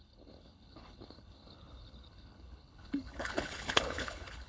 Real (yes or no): no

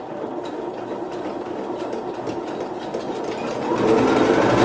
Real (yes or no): yes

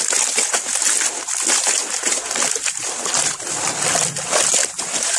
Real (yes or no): yes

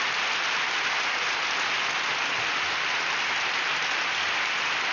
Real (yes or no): yes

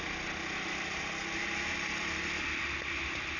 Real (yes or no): yes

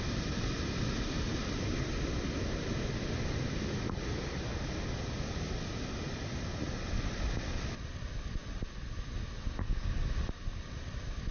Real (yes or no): yes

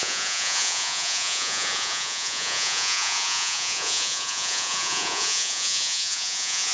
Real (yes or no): no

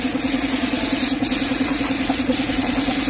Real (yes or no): no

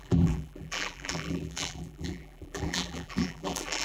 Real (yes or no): no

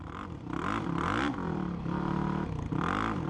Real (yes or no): yes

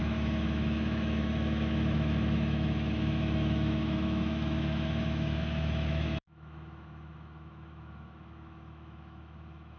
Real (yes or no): no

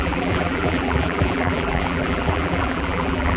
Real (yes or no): no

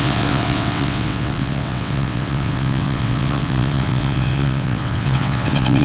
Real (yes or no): no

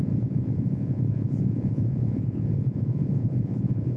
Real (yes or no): no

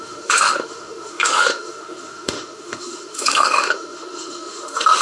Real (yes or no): no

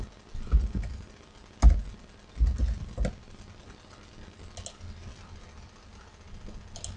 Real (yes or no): yes